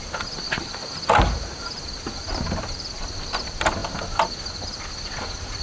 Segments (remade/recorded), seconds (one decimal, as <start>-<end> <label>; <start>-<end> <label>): 0.0-5.6 recorded